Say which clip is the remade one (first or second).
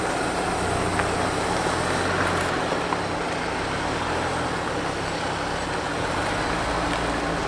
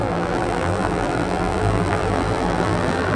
second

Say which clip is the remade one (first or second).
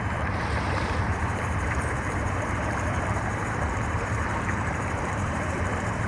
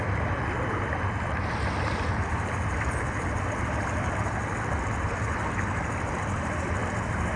first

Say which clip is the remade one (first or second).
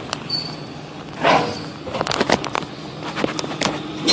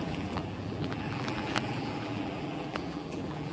second